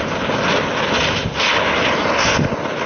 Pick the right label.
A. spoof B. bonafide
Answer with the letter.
B